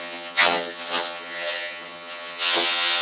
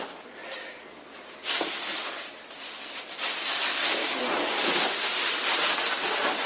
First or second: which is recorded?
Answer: second